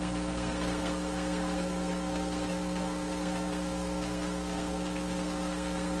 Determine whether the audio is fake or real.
fake